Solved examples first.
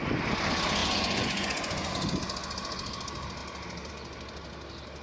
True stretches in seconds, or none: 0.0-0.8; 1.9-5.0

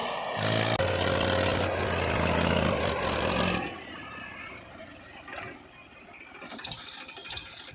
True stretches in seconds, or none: 0.0-7.7